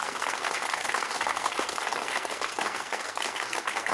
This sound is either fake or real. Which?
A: fake